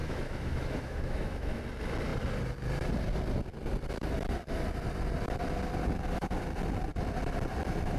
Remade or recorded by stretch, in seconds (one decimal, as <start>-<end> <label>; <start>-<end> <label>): 0.0-1.6 remade; 1.6-8.0 recorded

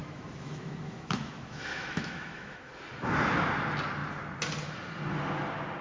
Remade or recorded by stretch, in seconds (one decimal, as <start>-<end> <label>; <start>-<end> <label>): 0.0-2.7 remade; 2.7-5.8 recorded